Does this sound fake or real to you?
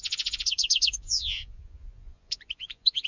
fake